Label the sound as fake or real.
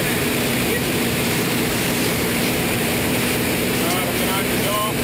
fake